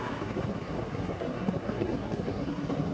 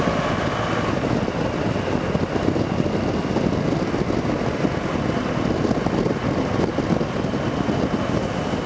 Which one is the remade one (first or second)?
first